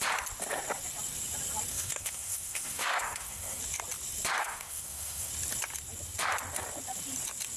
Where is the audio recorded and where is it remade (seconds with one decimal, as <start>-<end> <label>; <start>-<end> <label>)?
0.0-1.7 recorded; 1.7-3.6 remade; 3.6-4.4 recorded; 4.4-5.3 remade; 5.3-7.6 recorded